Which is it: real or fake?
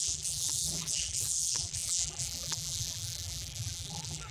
fake